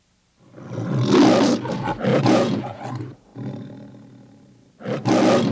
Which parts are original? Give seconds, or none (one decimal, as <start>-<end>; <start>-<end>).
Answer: 0.0-2.1; 2.8-5.5